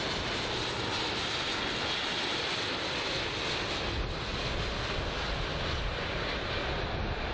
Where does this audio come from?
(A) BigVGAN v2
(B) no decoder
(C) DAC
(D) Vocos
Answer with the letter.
B